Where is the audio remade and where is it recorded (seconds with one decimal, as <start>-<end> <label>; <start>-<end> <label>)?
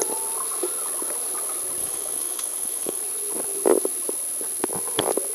0.0-1.8 recorded; 1.8-3.0 remade; 3.0-5.3 recorded